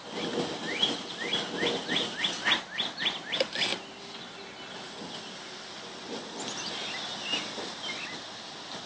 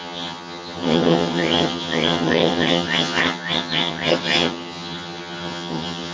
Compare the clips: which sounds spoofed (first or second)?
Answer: second